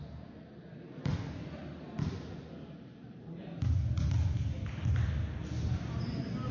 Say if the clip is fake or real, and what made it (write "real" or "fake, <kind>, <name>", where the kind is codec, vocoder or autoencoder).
real